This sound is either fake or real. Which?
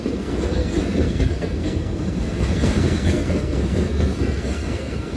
fake